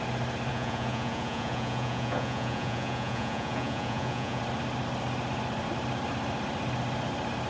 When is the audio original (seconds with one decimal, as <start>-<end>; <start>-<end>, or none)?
0.0-0.5; 4.4-7.5